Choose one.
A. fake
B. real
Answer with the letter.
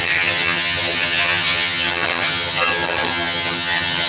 A